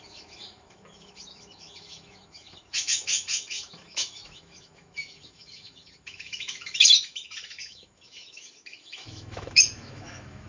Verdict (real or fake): fake